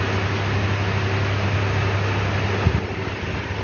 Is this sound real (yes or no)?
yes